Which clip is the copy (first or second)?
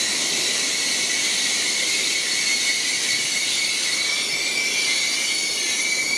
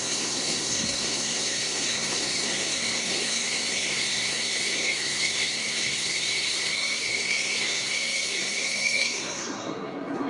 second